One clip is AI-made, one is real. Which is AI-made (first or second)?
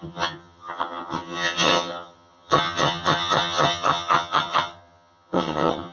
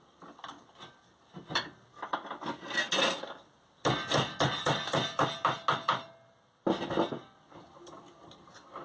first